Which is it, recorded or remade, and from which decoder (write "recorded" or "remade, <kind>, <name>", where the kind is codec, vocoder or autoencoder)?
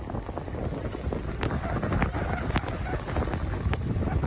recorded